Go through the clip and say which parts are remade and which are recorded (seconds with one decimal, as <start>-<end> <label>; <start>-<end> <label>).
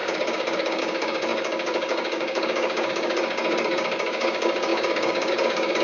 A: 0.0-5.8 remade